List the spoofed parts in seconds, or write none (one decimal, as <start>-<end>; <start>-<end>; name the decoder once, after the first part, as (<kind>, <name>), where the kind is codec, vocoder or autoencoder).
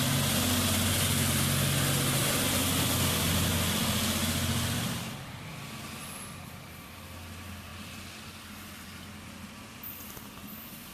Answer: none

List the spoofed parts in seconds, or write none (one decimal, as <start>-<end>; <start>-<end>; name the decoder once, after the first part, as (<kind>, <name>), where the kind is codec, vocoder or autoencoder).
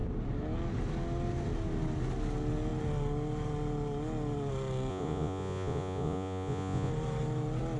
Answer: 4.9-6.9 (vocoder, Vocos)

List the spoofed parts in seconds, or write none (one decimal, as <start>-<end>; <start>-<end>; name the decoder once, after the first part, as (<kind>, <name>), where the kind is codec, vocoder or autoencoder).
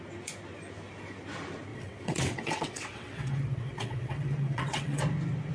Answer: 1.7-5.0 (vocoder, WaveNeXt)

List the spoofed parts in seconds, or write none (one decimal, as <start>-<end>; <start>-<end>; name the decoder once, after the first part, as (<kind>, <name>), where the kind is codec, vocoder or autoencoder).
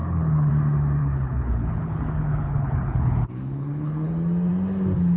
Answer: 0.0-0.5 (codec, HILCodec); 1.0-4.1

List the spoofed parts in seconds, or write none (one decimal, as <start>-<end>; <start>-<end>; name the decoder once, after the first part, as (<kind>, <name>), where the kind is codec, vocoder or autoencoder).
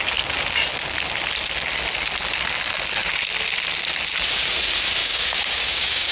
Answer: 5.0-6.1 (codec, DAC)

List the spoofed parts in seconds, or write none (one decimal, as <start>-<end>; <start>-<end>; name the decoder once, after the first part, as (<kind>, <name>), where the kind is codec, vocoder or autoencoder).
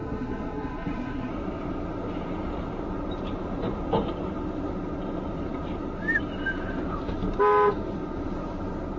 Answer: 0.0-1.3 (codec, SNAC)